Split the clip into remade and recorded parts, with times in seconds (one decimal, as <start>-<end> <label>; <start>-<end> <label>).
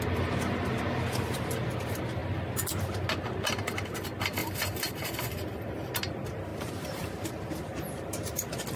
0.0-4.4 recorded; 4.4-5.9 remade; 5.9-6.5 recorded; 6.5-7.3 remade; 7.3-8.8 recorded